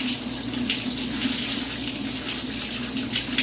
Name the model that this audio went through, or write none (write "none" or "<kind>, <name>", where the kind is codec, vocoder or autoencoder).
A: none